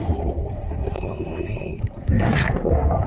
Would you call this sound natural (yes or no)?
no